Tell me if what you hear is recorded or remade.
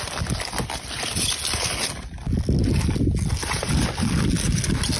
recorded